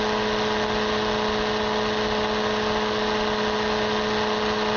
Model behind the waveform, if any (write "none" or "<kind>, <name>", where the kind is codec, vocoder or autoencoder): none